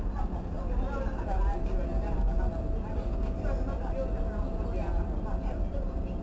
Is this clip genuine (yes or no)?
yes